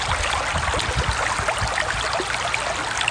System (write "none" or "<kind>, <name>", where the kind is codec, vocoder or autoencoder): none